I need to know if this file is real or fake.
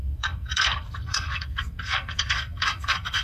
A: fake